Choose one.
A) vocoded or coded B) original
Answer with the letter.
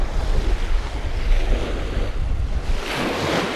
B